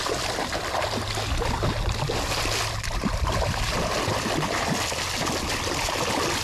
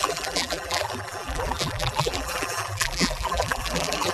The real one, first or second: first